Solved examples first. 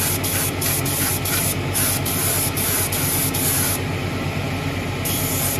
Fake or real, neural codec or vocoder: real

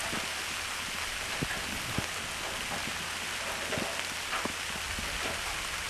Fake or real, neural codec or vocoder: real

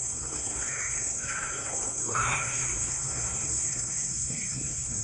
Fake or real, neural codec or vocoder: fake, codec, SNAC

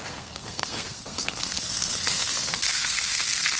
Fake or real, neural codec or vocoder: fake, codec, SNAC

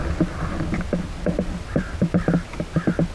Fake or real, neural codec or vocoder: real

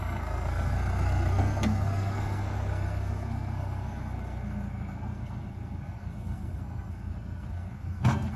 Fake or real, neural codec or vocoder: fake, codec, SNAC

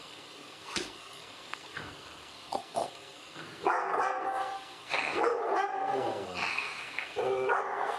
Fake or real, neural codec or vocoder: fake, codec, SNAC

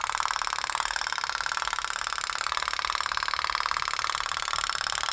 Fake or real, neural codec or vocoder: real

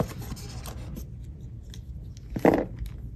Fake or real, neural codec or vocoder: real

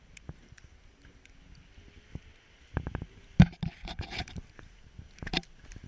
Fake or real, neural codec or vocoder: real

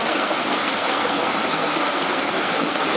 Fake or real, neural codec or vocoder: fake, codec, SNAC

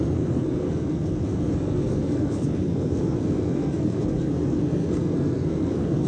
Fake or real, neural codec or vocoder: fake, codec, SNAC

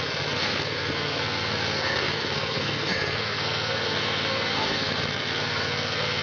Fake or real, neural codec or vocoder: fake, codec, SNAC